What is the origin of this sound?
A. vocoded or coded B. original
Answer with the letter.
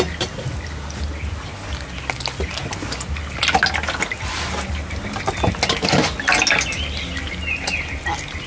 B